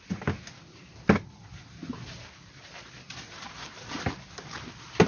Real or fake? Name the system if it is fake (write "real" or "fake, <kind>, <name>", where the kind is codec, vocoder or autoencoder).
real